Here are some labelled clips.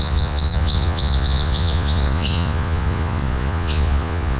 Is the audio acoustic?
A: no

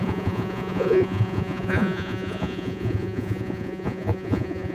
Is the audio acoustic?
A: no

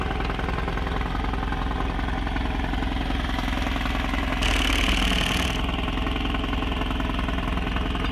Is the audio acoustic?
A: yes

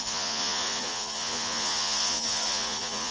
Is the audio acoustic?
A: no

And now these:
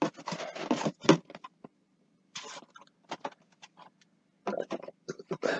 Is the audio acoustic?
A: yes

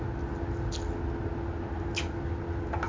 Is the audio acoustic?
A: yes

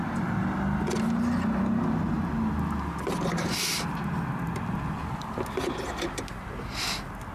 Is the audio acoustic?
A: yes